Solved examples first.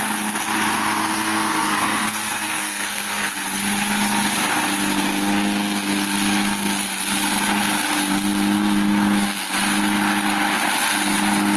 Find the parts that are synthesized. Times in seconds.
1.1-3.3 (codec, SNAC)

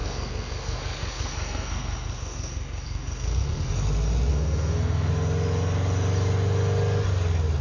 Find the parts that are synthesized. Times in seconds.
0.0-3.7 (codec, SNAC); 4.3-5.1

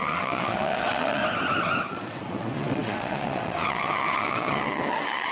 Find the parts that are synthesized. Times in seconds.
0.0-1.2 (vocoder, WaveNeXt); 1.9-5.3

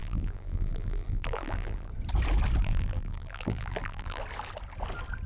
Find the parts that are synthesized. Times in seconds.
0.0-1.9 (vocoder, BigVGAN v2); 2.6-4.2

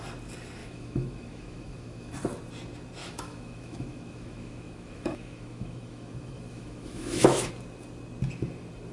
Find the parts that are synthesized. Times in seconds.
0.6-2.1 (autoencoder, DAC-VAE); 3.0-7.5

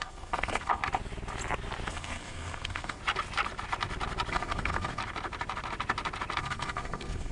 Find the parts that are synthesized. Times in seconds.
0.0-0.8 (codec, SNAC); 1.9-3.0; 4.3-5.0; 6.4-7.3

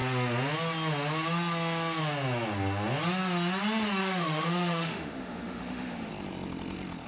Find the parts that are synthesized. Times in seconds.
4.0-6.1 (autoencoder, DAC-VAE)

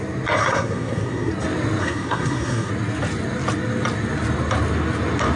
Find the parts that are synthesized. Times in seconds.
0.4-1.3 (codec, SNAC); 1.8-2.7